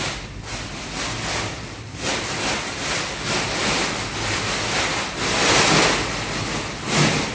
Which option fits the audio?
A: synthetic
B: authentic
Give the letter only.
B